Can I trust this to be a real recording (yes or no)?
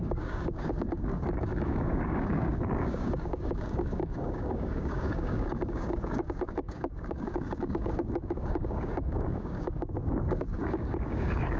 no